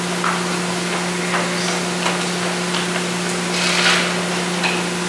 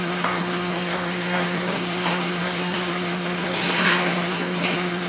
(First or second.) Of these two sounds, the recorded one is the first